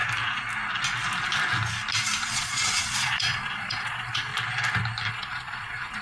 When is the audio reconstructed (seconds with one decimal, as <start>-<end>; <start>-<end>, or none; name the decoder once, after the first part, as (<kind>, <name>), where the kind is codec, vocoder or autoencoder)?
2.2-4.3 (vocoder, Vocos); 5.1-6.0